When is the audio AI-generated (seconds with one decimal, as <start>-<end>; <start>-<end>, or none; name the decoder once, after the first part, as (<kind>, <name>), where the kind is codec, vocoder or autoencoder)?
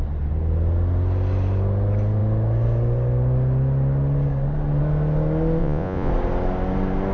5.6-6.1 (vocoder, Vocos)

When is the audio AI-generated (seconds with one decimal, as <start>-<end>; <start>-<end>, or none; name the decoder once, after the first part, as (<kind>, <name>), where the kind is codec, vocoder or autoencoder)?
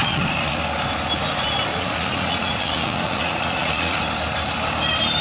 0.0-0.6 (vocoder, Vocos); 1.7-4.0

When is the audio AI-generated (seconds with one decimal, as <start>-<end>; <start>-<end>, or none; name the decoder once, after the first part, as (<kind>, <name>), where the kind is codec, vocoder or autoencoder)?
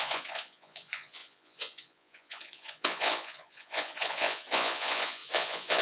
0.0-5.8 (vocoder, Vocos)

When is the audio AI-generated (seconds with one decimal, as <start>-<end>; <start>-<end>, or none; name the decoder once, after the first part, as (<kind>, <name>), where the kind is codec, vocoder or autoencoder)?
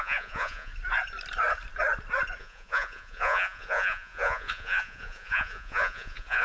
0.0-0.7 (vocoder, Vocos); 2.4-6.4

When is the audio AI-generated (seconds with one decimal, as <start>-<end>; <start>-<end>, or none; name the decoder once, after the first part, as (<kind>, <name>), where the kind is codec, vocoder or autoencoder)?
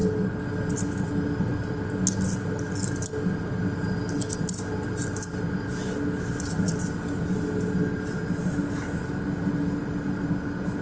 none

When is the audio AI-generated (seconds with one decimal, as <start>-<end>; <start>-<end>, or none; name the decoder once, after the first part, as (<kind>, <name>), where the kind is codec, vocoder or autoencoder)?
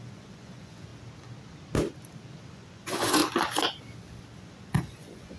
0.0-0.9 (vocoder, Vocos); 2.5-3.2; 4.4-5.4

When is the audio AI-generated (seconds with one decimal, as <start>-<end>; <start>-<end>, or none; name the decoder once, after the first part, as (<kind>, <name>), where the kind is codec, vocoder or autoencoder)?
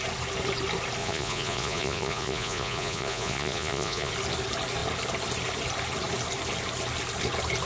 1.0-4.1 (vocoder, Vocos)